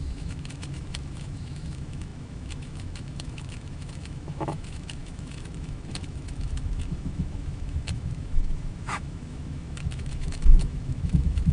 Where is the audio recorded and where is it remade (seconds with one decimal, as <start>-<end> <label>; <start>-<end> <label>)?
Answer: 0.0-11.5 remade